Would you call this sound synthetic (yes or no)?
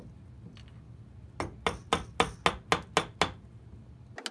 no